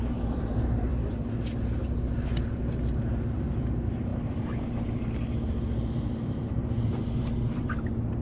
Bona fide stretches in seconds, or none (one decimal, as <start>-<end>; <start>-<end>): 0.9-1.6